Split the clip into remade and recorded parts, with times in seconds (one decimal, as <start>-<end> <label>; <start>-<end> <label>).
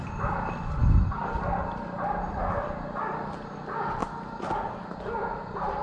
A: 0.0-5.8 recorded